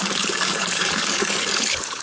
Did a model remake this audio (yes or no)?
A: yes